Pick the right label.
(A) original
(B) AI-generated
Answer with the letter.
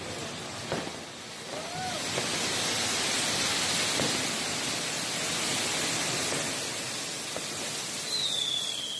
A